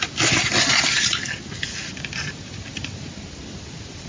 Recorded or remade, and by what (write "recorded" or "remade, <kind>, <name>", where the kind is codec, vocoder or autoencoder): remade, vocoder, BigVGAN v2